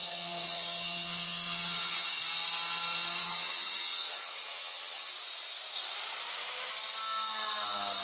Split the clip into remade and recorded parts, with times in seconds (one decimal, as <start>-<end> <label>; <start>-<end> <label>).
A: 0.0-2.2 remade; 2.2-3.2 recorded; 3.2-5.1 remade; 5.1-8.0 recorded